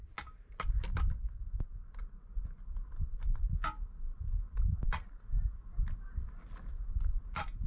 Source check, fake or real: real